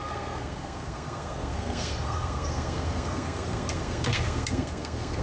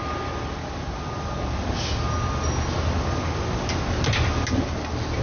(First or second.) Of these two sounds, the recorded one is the second